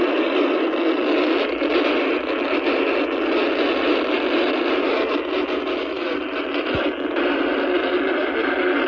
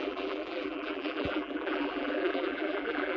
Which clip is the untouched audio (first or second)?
first